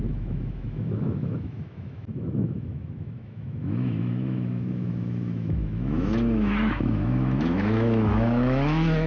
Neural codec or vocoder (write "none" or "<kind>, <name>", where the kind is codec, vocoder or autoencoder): autoencoder, DAC-VAE